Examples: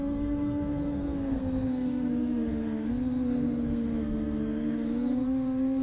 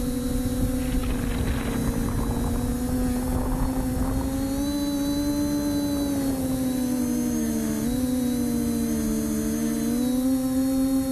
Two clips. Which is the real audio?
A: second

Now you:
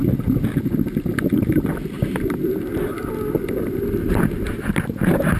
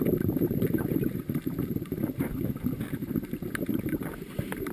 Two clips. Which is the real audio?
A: first